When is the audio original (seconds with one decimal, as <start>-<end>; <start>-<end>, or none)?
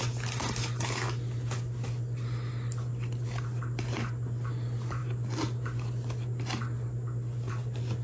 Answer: 0.0-8.0